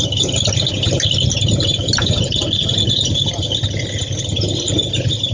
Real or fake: real